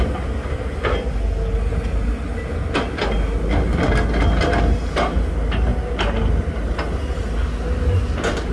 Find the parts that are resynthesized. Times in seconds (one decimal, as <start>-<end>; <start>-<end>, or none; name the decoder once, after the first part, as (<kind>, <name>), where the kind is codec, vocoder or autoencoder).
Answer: none